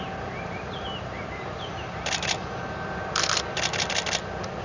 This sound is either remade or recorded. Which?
recorded